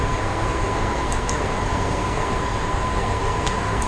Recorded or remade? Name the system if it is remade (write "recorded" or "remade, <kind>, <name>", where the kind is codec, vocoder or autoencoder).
remade, codec, SNAC